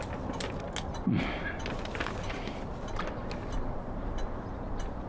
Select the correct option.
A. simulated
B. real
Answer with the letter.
B